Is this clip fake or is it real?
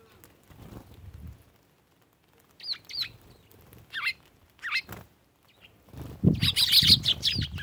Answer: real